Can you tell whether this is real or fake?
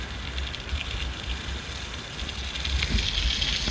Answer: real